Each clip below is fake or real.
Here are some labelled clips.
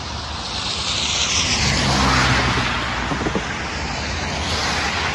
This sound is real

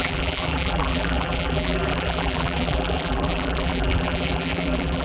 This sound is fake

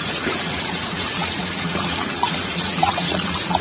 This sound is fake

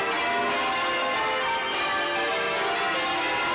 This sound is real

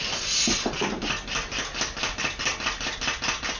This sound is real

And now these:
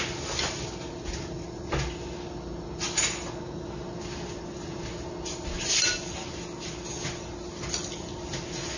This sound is real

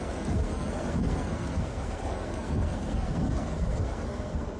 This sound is fake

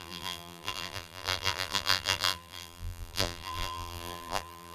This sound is fake